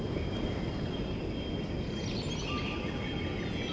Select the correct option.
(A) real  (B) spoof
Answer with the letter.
A